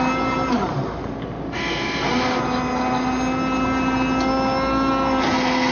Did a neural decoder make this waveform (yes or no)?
no